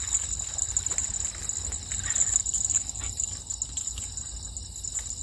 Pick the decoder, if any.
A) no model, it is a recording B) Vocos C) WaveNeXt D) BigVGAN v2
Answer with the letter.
A